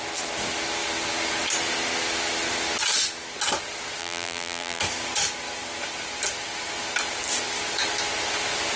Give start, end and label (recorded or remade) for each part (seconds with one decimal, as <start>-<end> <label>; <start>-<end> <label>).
0.0-4.0 recorded; 4.0-4.8 remade; 4.8-8.8 recorded